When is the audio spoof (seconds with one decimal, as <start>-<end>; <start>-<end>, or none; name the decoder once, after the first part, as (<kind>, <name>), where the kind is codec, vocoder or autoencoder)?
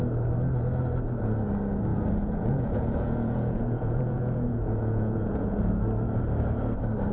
1.9-5.7 (vocoder, Vocos)